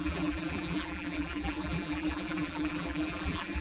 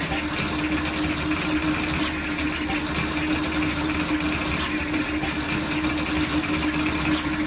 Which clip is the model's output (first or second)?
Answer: first